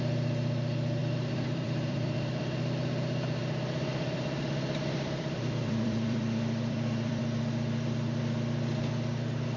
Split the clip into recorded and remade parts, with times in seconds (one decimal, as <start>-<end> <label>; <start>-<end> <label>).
0.0-1.0 recorded; 1.0-2.4 remade; 2.4-3.4 recorded; 3.4-7.2 remade; 7.2-9.6 recorded